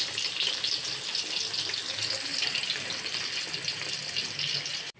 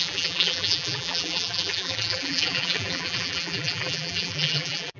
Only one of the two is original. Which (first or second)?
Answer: first